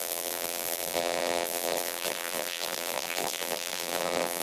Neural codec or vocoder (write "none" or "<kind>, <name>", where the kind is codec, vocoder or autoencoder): vocoder, BigVGAN v2